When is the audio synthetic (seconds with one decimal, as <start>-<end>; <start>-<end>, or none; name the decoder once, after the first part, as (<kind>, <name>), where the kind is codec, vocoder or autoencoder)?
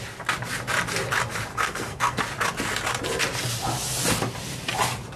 1.5-2.2 (codec, SNAC)